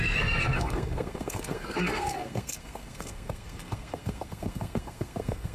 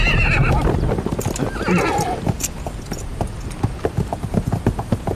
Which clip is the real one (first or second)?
second